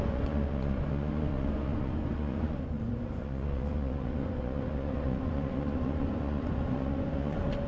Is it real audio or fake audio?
fake